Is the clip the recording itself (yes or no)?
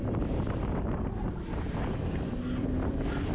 yes